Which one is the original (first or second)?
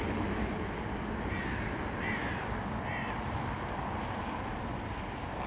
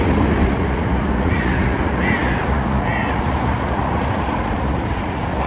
first